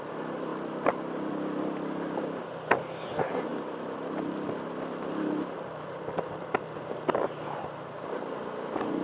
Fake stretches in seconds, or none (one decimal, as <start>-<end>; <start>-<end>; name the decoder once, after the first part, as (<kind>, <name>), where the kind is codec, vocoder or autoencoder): 0.5-2.7 (vocoder, BigVGAN v2); 3.5-6.7

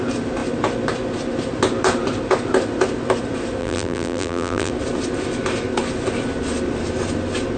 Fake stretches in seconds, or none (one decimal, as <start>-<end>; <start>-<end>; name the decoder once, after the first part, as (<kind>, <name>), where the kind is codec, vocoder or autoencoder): 3.6-4.7 (vocoder, BigVGAN v2)